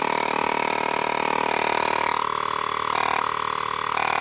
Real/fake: real